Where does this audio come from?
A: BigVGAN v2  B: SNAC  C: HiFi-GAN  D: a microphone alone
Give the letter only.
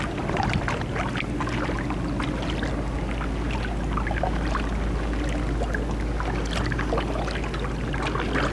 D